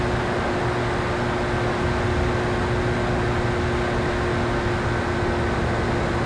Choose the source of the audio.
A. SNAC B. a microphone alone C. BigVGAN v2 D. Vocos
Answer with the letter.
B